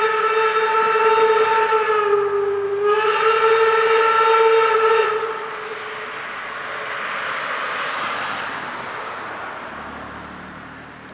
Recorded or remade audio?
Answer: recorded